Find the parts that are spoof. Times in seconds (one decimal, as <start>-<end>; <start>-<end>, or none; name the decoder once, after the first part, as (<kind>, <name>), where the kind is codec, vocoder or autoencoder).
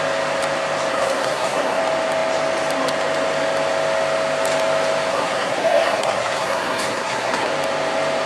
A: 0.9-1.8 (codec, SNAC); 5.1-7.5